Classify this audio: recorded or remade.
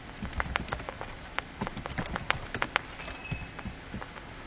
recorded